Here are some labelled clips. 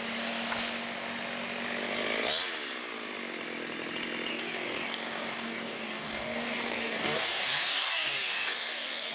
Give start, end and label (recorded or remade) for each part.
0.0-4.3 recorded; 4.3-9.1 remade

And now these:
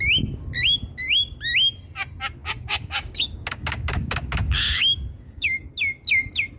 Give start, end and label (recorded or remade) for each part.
0.0-2.4 recorded; 2.4-5.7 remade; 5.7-6.6 recorded

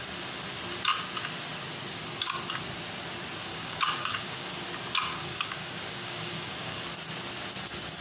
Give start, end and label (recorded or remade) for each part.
0.0-3.5 recorded; 3.5-4.5 remade; 4.5-5.1 recorded; 5.1-6.9 remade; 6.9-8.0 recorded

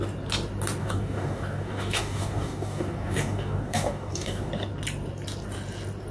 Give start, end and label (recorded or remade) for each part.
0.0-0.8 recorded; 0.8-4.5 remade; 4.5-6.1 recorded

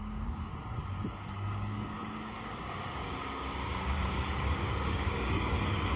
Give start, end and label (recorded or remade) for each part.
0.0-0.5 remade; 0.5-1.3 recorded; 1.3-6.0 remade